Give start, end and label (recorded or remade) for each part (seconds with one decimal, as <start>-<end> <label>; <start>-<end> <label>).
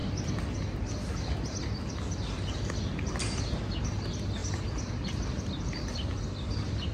0.0-6.9 recorded